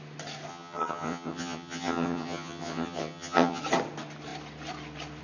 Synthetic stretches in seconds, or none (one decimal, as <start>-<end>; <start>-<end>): 0.5-3.6